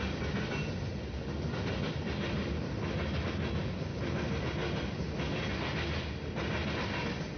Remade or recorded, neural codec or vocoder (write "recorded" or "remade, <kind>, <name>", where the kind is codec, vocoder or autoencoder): recorded